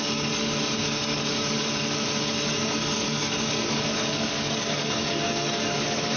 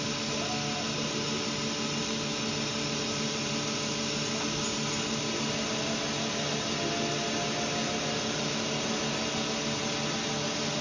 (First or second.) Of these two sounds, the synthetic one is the first